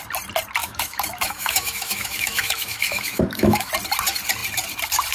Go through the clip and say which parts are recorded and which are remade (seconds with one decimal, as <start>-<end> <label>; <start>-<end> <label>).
0.0-0.6 recorded; 0.6-3.7 remade; 3.7-5.1 recorded